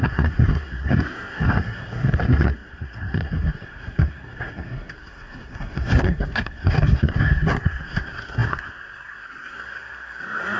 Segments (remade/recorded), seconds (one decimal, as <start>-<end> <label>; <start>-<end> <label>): 0.0-10.6 remade